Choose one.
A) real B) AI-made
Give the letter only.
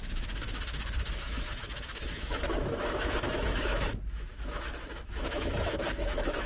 B